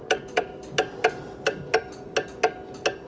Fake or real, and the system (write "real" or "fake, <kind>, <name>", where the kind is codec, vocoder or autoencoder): real